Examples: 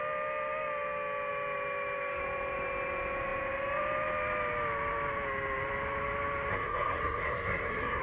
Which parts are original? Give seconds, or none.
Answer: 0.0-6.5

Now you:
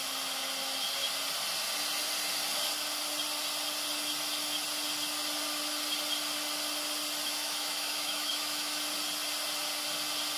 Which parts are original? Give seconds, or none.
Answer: 0.0-7.2; 8.8-10.4

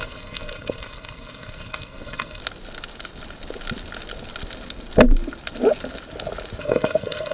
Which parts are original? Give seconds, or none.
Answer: 2.4-6.6

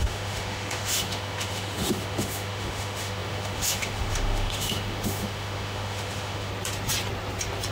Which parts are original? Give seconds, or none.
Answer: 6.5-7.7

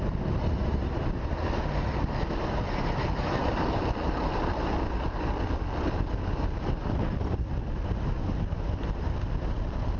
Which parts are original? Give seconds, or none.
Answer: 0.0-10.0

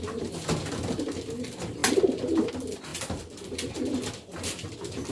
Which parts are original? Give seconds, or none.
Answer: 0.0-5.1